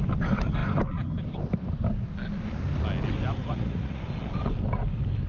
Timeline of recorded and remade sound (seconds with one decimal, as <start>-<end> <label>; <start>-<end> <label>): 0.0-3.4 recorded; 3.4-4.0 remade; 4.0-5.3 recorded